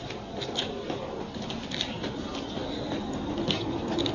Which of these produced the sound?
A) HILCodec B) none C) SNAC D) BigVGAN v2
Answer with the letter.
B